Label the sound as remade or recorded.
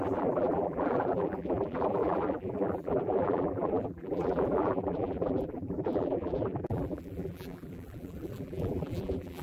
remade